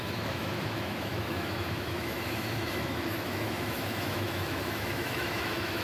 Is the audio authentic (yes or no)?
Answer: no